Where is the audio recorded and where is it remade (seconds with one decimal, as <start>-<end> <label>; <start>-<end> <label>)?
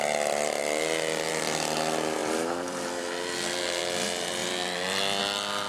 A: 0.0-0.6 recorded; 0.6-1.3 remade; 1.3-2.2 recorded; 2.2-3.8 remade; 3.8-4.4 recorded; 4.4-5.2 remade; 5.2-5.7 recorded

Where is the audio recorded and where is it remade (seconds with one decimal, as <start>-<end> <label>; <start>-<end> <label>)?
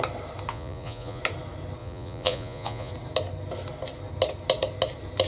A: 0.0-0.5 recorded; 0.5-1.2 remade; 1.2-1.8 recorded; 1.8-2.9 remade; 2.9-5.3 recorded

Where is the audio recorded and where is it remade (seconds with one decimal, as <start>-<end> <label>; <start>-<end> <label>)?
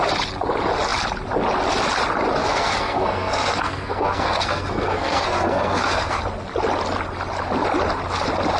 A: 0.0-2.4 recorded; 2.4-6.2 remade; 6.2-8.6 recorded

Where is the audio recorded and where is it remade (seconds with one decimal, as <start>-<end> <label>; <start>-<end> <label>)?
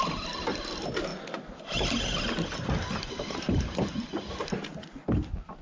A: 0.0-5.6 recorded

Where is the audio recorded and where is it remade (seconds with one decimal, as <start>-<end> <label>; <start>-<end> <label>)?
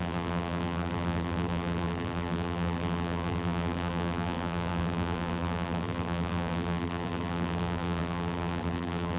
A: 0.0-9.2 remade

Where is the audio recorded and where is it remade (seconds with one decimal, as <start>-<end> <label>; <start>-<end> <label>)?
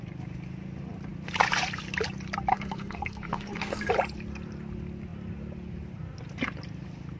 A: 0.0-2.5 recorded; 2.5-3.9 remade; 3.9-7.2 recorded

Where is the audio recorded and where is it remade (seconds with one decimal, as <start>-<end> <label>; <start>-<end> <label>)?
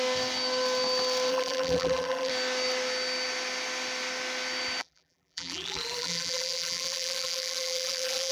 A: 0.0-1.3 recorded; 1.3-2.3 remade; 2.3-4.8 recorded; 4.8-8.3 remade